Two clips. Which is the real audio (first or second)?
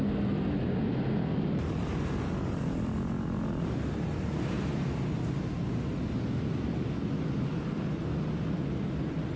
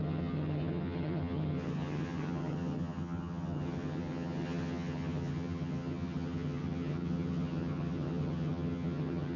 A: first